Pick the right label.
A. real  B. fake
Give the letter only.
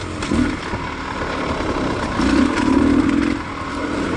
A